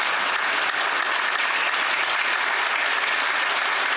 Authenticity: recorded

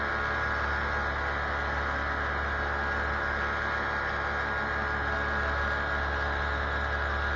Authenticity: recorded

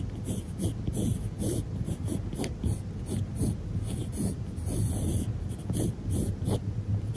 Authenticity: recorded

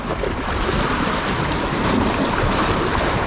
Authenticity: remade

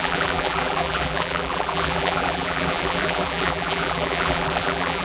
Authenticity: remade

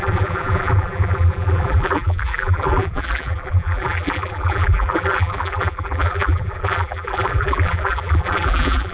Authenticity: remade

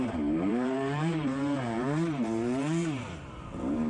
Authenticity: remade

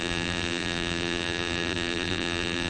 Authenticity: remade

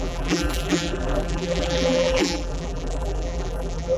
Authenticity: remade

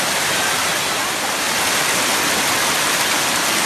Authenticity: recorded